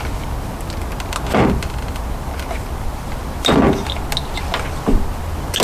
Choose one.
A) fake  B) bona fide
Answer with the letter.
B